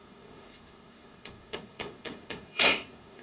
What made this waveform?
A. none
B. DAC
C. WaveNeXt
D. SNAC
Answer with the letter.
D